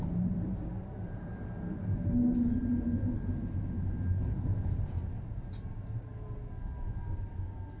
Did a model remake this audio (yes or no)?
no